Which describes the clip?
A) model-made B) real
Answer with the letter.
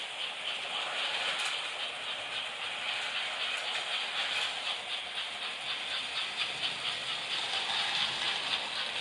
B